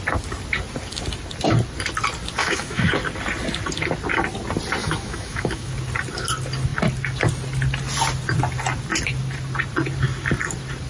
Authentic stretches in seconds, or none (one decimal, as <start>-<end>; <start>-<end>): 0.0-2.4; 2.9-4.8; 5.7-10.9